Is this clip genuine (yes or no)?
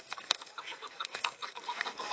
no